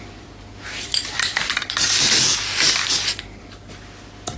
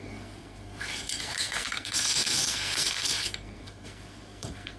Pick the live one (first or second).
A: first